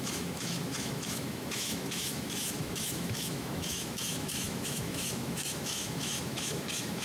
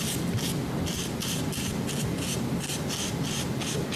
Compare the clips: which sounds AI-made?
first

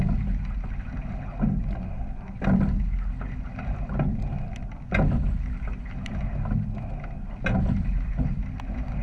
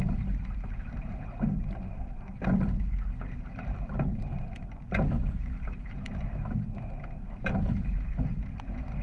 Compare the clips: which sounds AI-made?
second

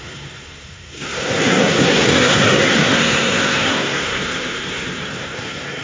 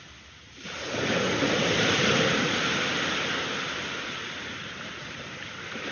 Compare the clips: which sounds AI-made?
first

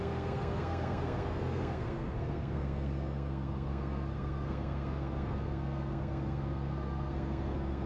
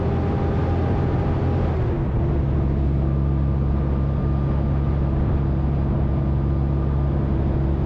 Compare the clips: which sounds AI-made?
first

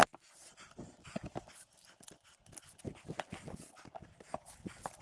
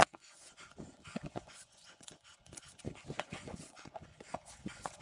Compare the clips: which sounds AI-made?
second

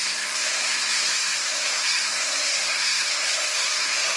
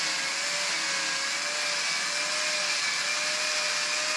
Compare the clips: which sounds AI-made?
first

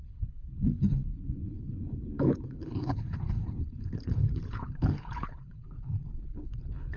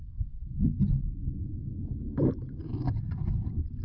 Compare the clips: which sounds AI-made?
first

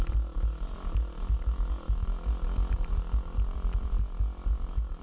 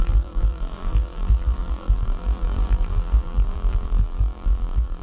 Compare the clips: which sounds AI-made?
second